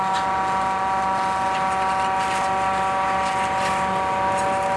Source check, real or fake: real